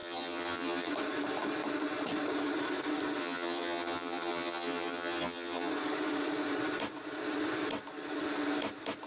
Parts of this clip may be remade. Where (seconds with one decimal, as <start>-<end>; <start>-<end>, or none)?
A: 0.0-0.9; 3.2-5.7